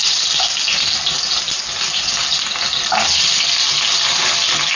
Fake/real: real